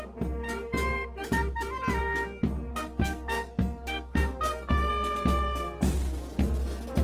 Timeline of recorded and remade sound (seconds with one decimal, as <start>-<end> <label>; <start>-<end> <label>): 0.0-2.7 recorded; 2.7-4.9 remade; 4.9-7.0 recorded